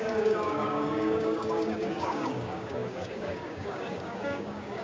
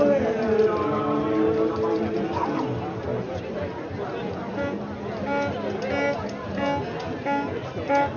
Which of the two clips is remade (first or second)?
first